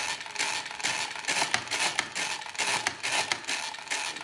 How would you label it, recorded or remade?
recorded